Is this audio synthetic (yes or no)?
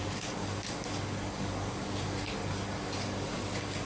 yes